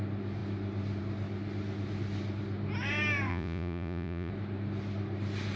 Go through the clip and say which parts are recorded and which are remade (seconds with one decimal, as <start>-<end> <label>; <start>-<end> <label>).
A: 0.0-3.3 recorded; 3.3-4.3 remade; 4.3-5.6 recorded